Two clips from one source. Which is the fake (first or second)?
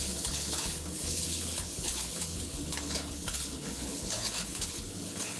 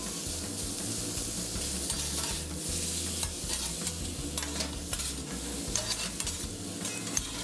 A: first